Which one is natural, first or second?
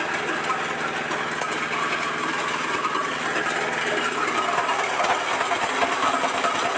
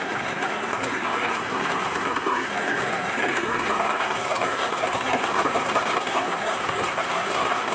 first